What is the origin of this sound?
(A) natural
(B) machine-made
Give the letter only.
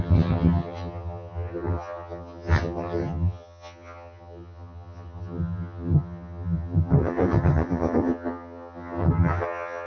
B